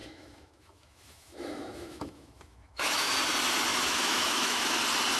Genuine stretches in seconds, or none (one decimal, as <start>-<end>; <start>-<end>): 3.1-3.7; 4.8-5.2